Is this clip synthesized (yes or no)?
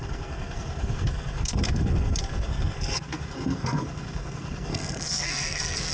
yes